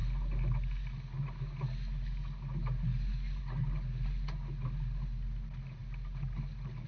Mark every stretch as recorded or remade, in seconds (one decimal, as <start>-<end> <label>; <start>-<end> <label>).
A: 0.0-6.9 recorded